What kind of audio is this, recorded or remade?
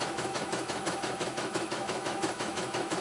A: remade